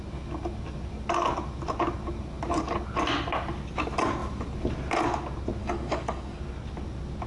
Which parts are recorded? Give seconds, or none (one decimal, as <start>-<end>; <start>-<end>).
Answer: 0.0-5.6; 6.4-7.3